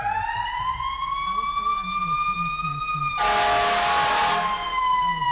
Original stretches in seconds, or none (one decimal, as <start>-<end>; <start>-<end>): 0.0-5.3